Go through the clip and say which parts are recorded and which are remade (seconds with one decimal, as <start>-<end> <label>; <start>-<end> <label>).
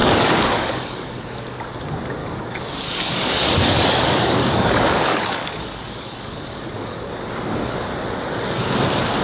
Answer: 0.0-1.6 remade; 1.6-2.2 recorded; 2.2-7.1 remade; 7.1-9.2 recorded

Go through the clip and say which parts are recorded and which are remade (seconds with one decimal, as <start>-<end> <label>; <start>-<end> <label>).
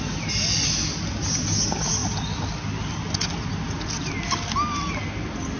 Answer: 0.0-5.6 recorded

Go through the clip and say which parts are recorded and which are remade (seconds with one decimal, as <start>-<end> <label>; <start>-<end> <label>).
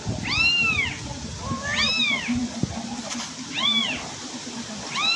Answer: 0.0-5.2 recorded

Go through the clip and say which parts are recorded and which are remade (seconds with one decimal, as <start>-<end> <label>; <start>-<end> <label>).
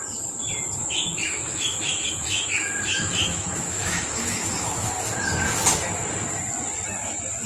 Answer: 0.0-0.8 recorded; 0.8-4.9 remade; 4.9-7.5 recorded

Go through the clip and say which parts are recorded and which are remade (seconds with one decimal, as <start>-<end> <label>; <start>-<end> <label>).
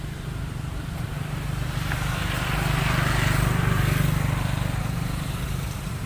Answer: 0.0-1.1 remade; 1.1-4.8 recorded; 4.8-6.1 remade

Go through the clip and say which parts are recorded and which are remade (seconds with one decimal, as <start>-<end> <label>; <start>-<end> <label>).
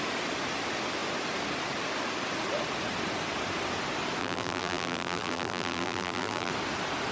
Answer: 0.0-4.2 recorded; 4.2-6.5 remade; 6.5-7.1 recorded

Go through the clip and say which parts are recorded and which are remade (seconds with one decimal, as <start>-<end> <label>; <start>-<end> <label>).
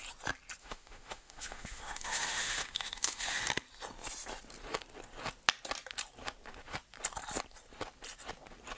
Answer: 0.0-0.6 recorded; 0.6-3.4 remade; 3.4-8.8 recorded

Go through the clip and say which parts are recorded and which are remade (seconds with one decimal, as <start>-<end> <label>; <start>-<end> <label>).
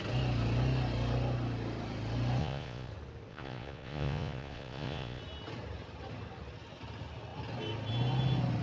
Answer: 0.0-2.4 recorded; 2.4-2.9 remade; 2.9-3.3 recorded; 3.3-5.2 remade; 5.2-8.6 recorded